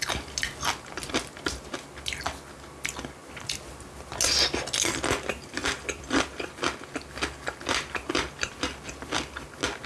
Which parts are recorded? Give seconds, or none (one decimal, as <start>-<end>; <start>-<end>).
0.0-5.6; 6.5-9.9